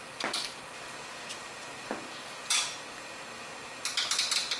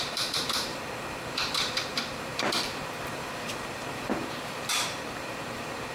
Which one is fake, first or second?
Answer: second